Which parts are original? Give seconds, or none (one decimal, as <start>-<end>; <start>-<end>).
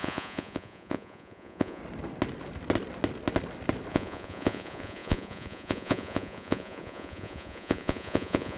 1.8-3.9